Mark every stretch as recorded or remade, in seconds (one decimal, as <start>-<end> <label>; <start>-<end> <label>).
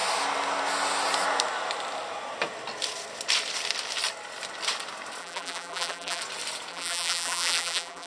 0.0-5.2 recorded; 5.2-6.2 remade; 6.2-6.7 recorded; 6.7-8.1 remade